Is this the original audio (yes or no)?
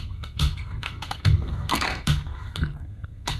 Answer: no